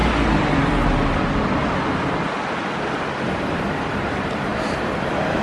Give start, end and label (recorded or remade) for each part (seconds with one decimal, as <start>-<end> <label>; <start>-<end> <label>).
0.0-3.2 recorded; 3.2-5.4 remade